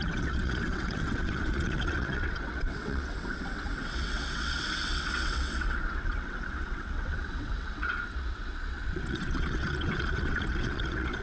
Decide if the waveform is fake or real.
fake